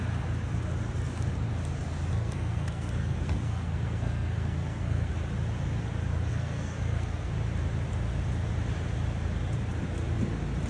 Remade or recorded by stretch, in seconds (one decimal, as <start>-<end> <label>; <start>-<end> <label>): 0.0-2.1 recorded; 2.1-5.1 remade; 5.1-6.3 recorded; 6.3-7.3 remade; 7.3-10.7 recorded